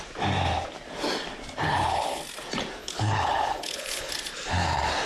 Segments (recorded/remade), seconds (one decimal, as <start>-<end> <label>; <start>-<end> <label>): 0.0-1.7 recorded; 1.7-2.2 remade; 2.2-2.8 recorded; 2.8-4.1 remade; 4.1-5.1 recorded